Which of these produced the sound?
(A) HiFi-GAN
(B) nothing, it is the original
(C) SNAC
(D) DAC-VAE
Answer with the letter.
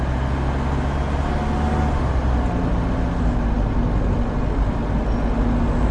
B